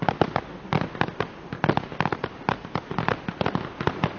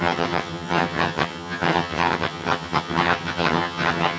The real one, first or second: first